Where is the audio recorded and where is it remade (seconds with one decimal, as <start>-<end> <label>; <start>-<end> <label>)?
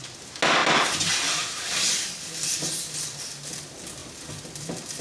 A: 0.0-5.0 recorded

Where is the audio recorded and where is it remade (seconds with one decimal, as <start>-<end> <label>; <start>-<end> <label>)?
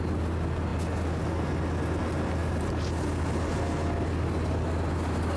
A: 0.0-5.4 recorded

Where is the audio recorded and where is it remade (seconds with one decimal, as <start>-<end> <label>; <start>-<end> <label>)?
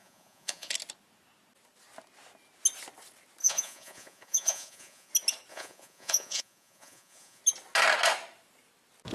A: 0.0-0.7 remade; 0.7-3.4 recorded; 3.4-5.1 remade; 5.1-5.5 recorded; 5.5-7.4 remade; 7.4-9.1 recorded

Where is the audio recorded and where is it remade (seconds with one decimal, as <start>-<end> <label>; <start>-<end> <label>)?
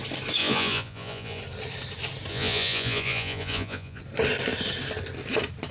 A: 0.0-0.4 recorded; 0.4-1.4 remade; 1.4-2.3 recorded; 2.3-4.0 remade; 4.0-5.7 recorded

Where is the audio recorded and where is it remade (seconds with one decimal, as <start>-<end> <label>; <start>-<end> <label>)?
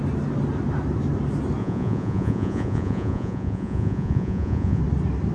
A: 0.0-1.6 recorded; 1.6-4.8 remade; 4.8-5.3 recorded